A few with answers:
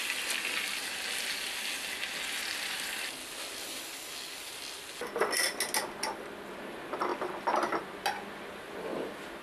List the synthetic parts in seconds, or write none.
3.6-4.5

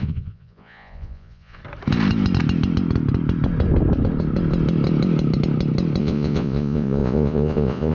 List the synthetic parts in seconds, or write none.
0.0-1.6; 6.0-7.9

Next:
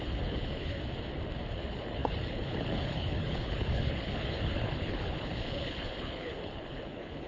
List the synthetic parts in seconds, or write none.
0.0-0.8; 1.5-7.3